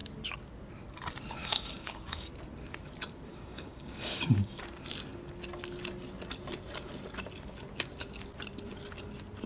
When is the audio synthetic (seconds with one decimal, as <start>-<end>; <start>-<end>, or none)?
1.4-2.3; 3.3-4.6